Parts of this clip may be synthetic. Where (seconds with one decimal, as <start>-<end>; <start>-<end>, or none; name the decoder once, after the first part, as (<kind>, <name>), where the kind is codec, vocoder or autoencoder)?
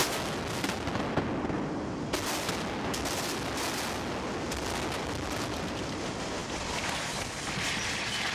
none